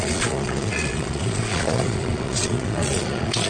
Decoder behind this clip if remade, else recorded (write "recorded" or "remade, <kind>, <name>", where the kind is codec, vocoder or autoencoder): remade, vocoder, Vocos